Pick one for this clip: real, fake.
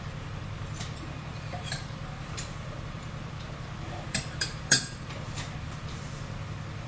fake